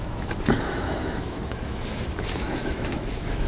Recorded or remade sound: remade